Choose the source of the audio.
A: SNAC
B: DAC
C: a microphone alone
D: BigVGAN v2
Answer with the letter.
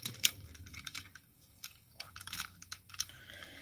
B